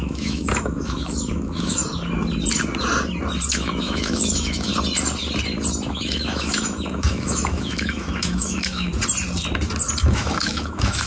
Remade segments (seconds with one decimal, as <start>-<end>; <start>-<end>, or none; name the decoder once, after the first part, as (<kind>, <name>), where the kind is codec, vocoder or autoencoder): 0.0-1.8 (autoencoder, DAC-VAE); 3.5-4.7; 5.9-8.9; 10.0-11.1